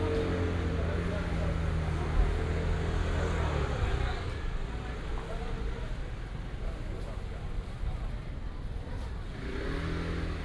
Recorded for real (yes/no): yes